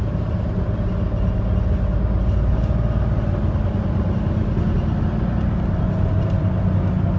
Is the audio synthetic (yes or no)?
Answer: no